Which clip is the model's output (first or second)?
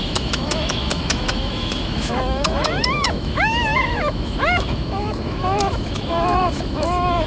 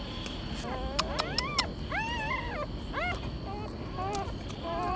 first